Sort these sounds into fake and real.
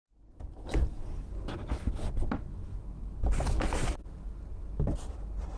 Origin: real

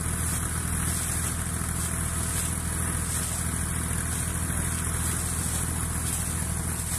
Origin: real